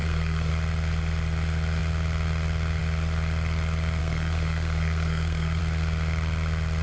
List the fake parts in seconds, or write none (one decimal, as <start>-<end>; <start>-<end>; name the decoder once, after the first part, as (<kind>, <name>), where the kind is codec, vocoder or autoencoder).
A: 0.0-0.5 (codec, SNAC); 4.0-5.6